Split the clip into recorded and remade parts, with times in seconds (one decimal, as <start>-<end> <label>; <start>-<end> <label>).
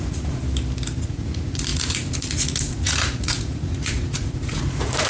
0.0-0.4 remade; 0.4-1.0 recorded; 1.0-5.1 remade